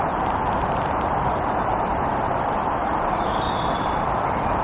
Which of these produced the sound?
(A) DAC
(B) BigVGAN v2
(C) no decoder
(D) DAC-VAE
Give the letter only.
B